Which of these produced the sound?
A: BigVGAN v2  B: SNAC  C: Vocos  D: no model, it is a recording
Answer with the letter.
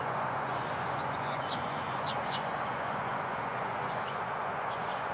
C